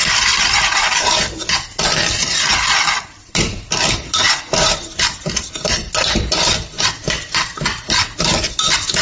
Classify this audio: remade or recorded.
remade